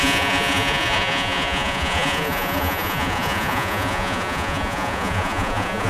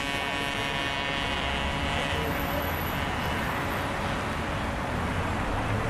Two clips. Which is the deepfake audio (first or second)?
first